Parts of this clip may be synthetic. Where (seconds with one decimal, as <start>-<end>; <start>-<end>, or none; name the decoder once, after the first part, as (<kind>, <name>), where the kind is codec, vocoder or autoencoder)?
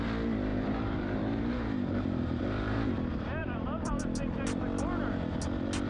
0.5-2.9 (vocoder, BigVGAN v2); 3.4-3.9